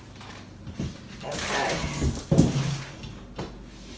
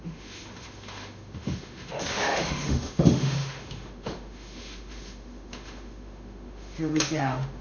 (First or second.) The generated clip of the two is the second